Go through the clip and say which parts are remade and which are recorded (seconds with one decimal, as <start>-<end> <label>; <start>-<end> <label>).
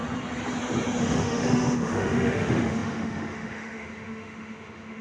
0.0-1.0 recorded; 1.0-5.0 remade